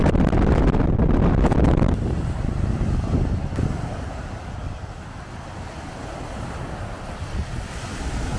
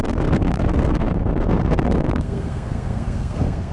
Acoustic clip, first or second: first